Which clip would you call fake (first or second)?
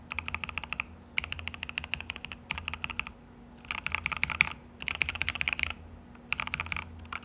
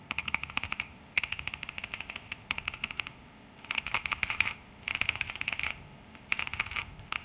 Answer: second